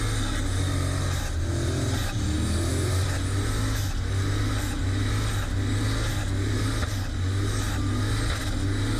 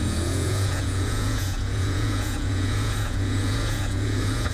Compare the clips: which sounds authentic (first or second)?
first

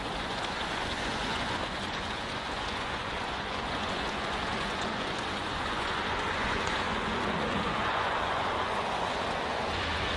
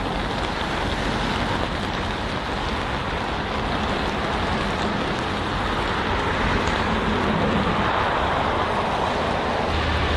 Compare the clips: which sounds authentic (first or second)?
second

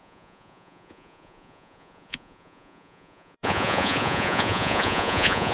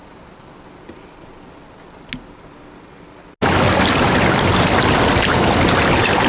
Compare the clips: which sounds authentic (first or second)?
second